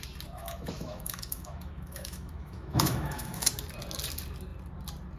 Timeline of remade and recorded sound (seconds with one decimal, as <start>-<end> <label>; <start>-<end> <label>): 0.0-0.4 recorded; 0.4-3.5 remade; 3.5-5.2 recorded